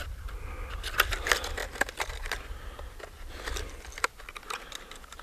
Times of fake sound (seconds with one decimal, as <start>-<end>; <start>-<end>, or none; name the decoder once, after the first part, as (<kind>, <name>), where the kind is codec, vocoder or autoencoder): none

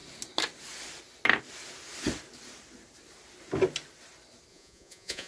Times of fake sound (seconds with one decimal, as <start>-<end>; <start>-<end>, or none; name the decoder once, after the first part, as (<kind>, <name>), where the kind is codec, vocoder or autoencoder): 4.5-5.3 (vocoder, Vocos)

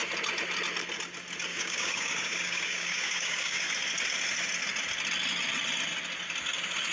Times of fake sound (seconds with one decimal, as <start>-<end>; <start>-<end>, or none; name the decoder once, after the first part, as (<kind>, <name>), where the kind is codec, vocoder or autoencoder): 1.5-3.7 (codec, DAC)

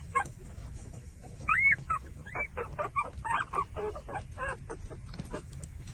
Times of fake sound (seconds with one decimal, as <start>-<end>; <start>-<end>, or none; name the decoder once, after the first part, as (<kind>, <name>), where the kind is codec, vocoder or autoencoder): 0.0-2.2 (autoencoder, DAC-VAE); 5.3-5.9

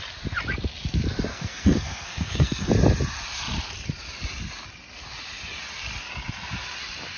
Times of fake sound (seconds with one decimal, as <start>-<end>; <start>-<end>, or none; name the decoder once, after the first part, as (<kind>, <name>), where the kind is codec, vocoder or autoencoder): 1.3-2.7 (codec, SNAC)

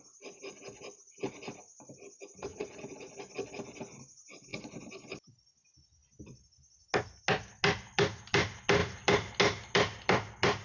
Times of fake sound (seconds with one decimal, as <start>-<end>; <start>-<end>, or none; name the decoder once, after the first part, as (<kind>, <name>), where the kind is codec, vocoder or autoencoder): 2.5-3.1 (vocoder, Vocos)